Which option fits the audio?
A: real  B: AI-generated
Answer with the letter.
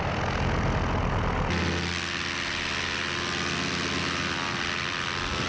A